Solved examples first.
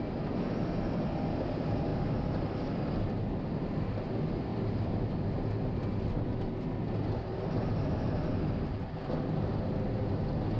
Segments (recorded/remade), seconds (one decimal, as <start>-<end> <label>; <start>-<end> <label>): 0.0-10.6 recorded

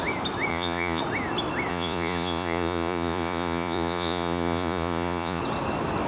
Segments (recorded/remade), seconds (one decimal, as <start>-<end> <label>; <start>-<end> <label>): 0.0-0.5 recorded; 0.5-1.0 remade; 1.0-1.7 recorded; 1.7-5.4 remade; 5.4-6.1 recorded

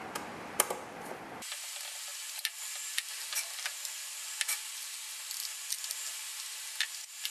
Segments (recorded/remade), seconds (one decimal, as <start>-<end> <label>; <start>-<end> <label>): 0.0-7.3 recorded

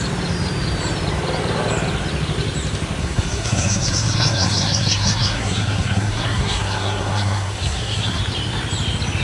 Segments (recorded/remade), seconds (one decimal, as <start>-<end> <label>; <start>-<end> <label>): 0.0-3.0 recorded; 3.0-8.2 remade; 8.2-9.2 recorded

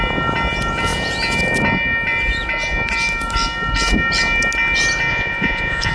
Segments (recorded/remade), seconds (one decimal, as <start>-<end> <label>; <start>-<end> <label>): 0.0-5.1 recorded; 5.1-5.9 remade